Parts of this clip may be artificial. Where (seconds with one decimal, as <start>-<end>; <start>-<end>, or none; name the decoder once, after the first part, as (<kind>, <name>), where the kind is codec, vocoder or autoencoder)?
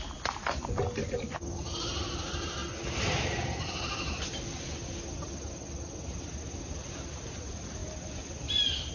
none